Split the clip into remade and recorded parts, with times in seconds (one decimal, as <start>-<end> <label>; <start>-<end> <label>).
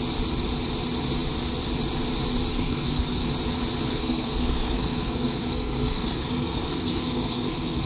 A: 0.0-2.5 recorded; 2.5-3.3 remade; 3.3-3.9 recorded; 3.9-7.9 remade